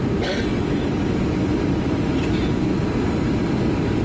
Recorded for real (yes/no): yes